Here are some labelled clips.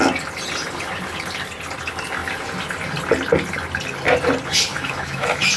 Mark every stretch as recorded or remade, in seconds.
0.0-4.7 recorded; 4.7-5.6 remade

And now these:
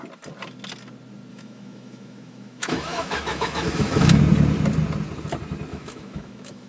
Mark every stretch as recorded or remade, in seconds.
0.0-1.3 recorded; 1.3-4.2 remade; 4.2-5.7 recorded; 5.7-6.7 remade

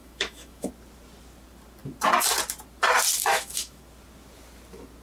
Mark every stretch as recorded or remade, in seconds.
0.0-0.7 remade; 0.7-3.2 recorded; 3.2-3.8 remade; 3.8-5.0 recorded

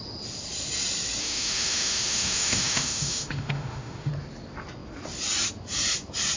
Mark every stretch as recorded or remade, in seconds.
0.0-1.2 recorded; 1.2-4.1 remade; 4.1-6.4 recorded

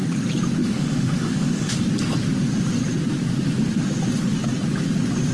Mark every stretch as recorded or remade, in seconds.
0.0-0.6 recorded; 0.6-1.7 remade; 1.7-5.3 recorded

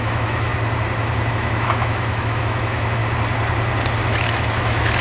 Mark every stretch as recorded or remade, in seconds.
0.0-0.5 remade; 0.5-1.3 recorded; 1.3-3.0 remade; 3.0-4.1 recorded; 4.1-5.0 remade

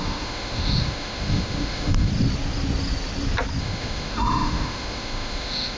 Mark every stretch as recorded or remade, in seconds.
0.0-2.1 remade; 2.1-3.6 recorded; 3.6-5.8 remade